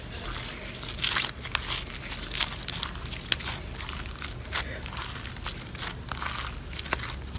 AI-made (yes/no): no